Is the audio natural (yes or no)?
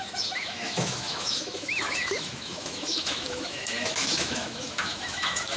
no